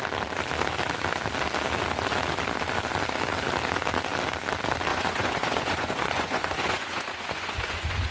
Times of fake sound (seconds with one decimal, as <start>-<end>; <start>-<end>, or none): 4.9-8.1